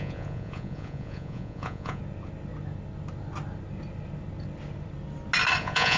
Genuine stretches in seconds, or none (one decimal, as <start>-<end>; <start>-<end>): 2.0-5.6